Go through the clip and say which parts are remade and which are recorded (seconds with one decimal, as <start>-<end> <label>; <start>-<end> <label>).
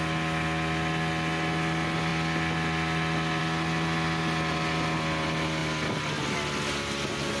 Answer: 0.0-7.4 recorded